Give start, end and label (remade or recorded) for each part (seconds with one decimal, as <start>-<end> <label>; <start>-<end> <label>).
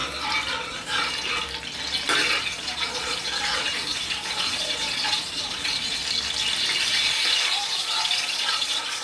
0.0-0.5 recorded; 0.5-1.0 remade; 1.0-2.4 recorded; 2.4-6.0 remade; 6.0-6.8 recorded; 6.8-9.0 remade